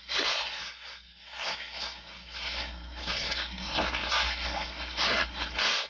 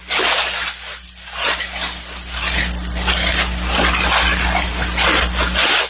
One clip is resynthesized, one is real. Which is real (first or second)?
second